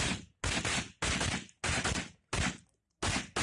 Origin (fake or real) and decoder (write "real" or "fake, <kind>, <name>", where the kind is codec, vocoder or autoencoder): real